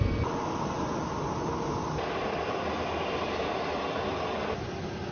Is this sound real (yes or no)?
yes